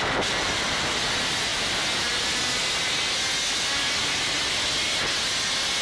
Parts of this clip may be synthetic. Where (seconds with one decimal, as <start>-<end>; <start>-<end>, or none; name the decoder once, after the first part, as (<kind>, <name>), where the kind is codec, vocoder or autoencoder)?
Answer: none